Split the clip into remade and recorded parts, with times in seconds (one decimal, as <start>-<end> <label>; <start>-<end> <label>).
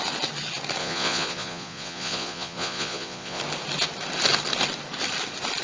0.0-0.8 recorded; 0.8-3.4 remade; 3.4-5.6 recorded